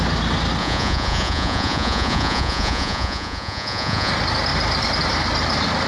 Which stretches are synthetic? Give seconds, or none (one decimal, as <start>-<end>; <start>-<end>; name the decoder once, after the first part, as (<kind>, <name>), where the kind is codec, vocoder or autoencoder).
0.6-4.1 (vocoder, Vocos)